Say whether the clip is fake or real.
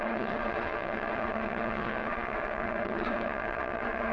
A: fake